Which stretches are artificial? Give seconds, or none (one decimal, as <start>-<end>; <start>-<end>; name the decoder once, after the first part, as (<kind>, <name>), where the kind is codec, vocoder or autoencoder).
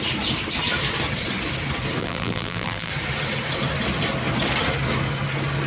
2.0-2.9 (vocoder, BigVGAN v2)